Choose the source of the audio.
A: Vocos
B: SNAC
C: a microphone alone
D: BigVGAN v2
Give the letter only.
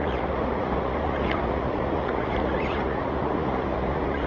A